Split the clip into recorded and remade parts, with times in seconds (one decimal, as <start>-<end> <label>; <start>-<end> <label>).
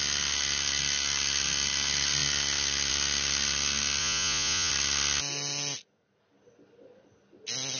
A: 0.0-4.0 recorded; 4.0-4.7 remade; 4.7-7.8 recorded